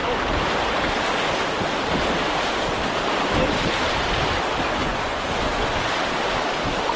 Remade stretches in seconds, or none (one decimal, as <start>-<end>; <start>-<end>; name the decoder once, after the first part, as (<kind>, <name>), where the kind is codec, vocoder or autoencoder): 4.8-5.9 (vocoder, Vocos)